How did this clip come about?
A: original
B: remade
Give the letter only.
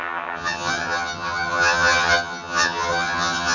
B